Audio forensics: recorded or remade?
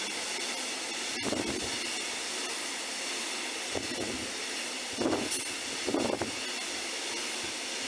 recorded